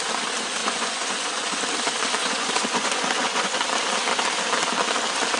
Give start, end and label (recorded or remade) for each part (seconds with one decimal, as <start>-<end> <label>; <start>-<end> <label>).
0.0-0.6 recorded; 0.6-1.6 remade; 1.6-2.2 recorded; 2.2-3.6 remade; 3.6-5.4 recorded